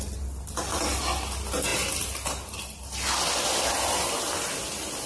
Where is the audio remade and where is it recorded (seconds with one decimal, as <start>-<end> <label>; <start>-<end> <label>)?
0.0-5.1 recorded

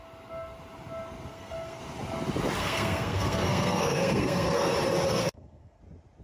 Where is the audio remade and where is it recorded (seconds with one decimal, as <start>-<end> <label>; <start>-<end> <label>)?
0.0-1.3 recorded; 1.3-1.8 remade; 1.8-2.6 recorded; 2.6-4.7 remade; 4.7-5.2 recorded; 5.2-5.8 remade; 5.8-6.2 recorded

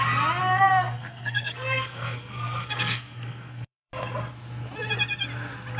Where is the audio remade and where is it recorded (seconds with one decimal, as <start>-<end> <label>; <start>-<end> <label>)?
0.0-0.4 recorded; 0.4-3.9 remade; 3.9-5.8 recorded

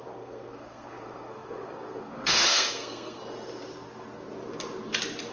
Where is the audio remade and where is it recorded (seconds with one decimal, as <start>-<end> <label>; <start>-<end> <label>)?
0.0-3.2 remade; 3.2-5.3 recorded

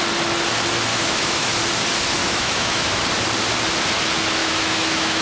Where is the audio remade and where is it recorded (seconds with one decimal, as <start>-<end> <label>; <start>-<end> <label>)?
0.0-0.9 recorded; 0.9-1.5 remade; 1.5-2.2 recorded; 2.2-3.0 remade; 3.0-4.4 recorded; 4.4-5.2 remade

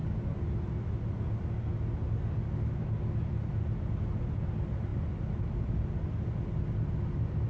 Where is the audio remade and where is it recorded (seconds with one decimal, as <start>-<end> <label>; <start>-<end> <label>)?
0.0-7.5 recorded

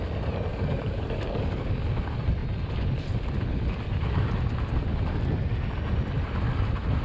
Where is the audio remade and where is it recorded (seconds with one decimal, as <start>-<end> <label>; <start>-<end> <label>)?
0.0-0.5 recorded; 0.5-2.0 remade; 2.0-7.0 recorded